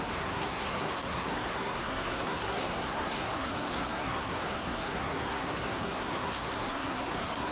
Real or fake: fake